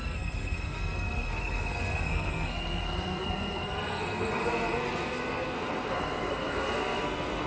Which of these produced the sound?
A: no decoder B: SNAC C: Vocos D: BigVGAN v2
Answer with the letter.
B